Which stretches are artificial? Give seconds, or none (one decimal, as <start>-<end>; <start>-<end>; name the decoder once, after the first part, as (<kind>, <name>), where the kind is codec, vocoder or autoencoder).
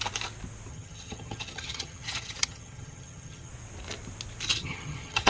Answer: 0.7-3.5 (vocoder, HiFi-GAN); 4.5-5.3